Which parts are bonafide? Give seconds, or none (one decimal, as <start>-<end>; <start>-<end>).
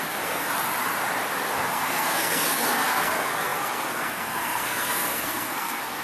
0.5-1.7